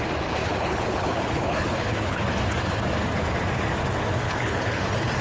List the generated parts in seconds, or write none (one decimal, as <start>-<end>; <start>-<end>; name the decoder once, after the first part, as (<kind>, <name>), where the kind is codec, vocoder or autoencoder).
0.4-2.2 (codec, HILCodec); 4.2-4.8